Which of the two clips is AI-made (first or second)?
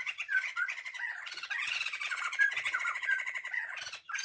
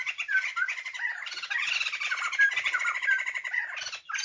first